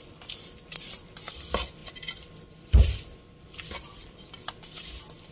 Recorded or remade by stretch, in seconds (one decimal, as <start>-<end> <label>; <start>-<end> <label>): 0.0-5.3 remade